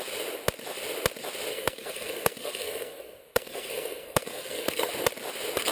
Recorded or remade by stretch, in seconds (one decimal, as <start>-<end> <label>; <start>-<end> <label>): 0.0-1.5 recorded; 1.5-4.9 remade; 4.9-5.7 recorded